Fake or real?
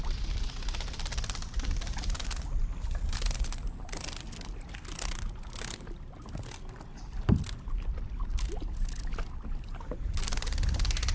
real